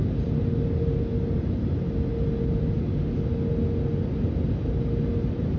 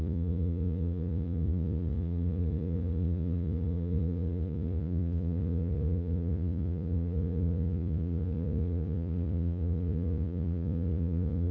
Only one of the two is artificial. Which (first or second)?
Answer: second